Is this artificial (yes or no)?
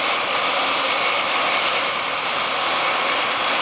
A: no